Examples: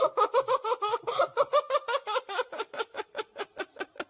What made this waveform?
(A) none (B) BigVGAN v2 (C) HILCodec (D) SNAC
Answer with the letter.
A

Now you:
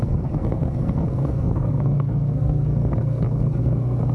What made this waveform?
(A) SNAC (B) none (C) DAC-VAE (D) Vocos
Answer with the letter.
A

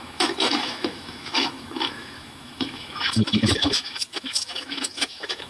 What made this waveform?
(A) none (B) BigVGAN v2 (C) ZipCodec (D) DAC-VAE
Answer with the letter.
D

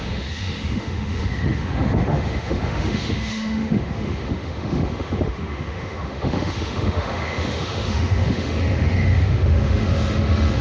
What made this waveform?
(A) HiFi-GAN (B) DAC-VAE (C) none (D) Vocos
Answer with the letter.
B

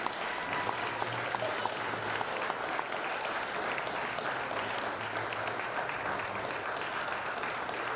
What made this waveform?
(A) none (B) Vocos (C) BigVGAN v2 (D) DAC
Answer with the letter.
A